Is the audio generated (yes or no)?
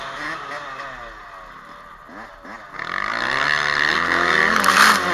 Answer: no